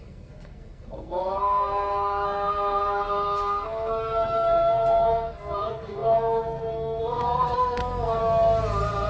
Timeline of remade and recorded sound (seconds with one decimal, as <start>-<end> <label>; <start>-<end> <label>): 0.0-8.2 remade; 8.2-9.1 recorded